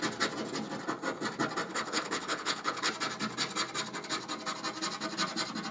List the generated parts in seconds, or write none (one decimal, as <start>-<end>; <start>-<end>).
1.7-2.9